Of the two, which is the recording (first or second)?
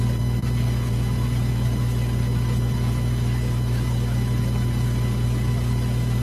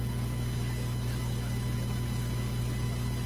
second